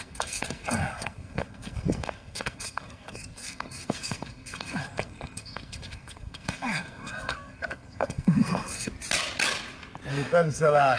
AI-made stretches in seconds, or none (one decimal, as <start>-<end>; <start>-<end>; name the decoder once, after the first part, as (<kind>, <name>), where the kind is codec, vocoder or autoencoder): 0.0-8.9 (codec, SNAC); 10.1-11.0